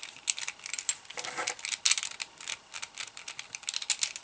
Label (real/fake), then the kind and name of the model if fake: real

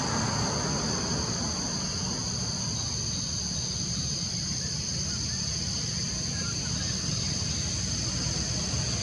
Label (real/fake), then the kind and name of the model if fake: real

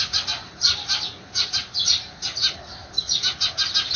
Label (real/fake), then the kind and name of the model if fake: real